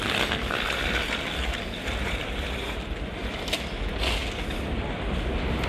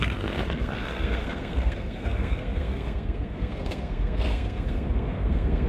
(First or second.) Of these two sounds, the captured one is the first